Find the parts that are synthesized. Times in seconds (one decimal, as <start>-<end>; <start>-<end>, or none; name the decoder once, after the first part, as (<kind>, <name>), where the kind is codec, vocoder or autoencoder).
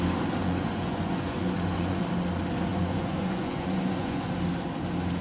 0.4-2.0 (vocoder, Vocos); 2.7-4.3